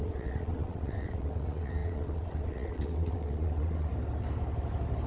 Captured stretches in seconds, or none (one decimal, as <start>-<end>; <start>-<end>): 3.9-5.1